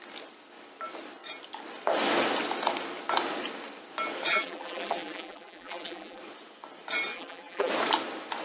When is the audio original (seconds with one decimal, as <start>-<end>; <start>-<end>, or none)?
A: 0.0-4.3; 6.2-7.1; 7.7-8.4